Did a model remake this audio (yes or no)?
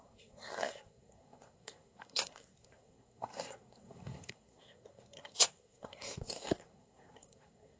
yes